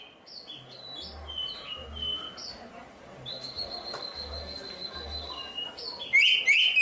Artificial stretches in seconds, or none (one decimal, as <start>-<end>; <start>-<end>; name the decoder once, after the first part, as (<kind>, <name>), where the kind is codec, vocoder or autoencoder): none